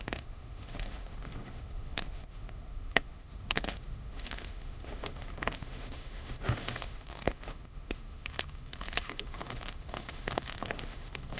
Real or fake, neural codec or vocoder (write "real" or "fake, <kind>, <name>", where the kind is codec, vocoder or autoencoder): fake, autoencoder, DAC-VAE